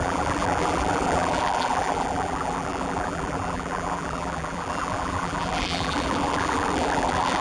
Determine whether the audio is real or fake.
fake